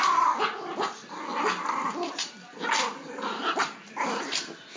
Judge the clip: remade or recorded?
recorded